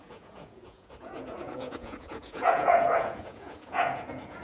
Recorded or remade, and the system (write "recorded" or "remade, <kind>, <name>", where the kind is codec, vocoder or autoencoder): remade, vocoder, Vocos